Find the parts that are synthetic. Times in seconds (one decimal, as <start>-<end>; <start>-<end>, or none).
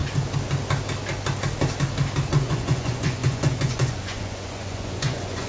2.3-5.5